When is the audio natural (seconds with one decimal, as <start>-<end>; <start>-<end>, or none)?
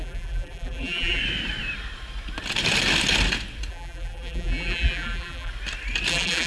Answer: 1.2-3.7; 5.5-6.1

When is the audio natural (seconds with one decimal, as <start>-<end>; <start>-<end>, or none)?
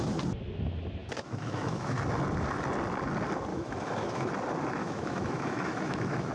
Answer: 0.0-1.0; 2.0-3.5; 4.3-4.8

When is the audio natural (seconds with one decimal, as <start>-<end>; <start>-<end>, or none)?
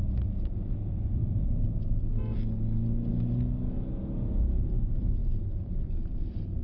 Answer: 0.0-1.2; 1.7-5.2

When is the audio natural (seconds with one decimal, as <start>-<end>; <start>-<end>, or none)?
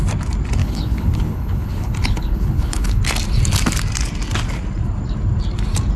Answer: 0.0-0.6; 3.0-6.0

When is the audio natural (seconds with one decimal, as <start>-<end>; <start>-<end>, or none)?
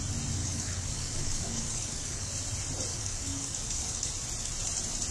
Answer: 0.0-0.4; 2.3-2.9; 4.1-5.1